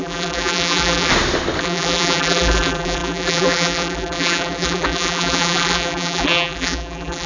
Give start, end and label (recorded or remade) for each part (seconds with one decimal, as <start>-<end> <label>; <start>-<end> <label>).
0.0-1.1 remade; 1.1-1.6 recorded; 1.6-7.3 remade